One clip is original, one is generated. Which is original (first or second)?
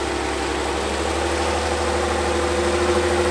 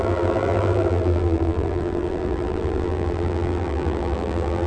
first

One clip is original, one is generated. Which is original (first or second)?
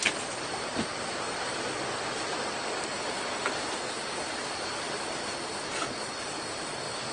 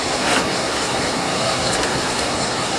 first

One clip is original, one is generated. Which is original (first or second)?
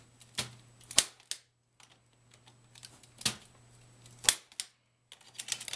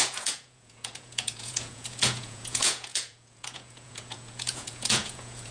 first